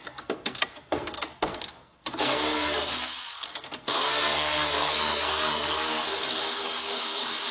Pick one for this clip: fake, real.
fake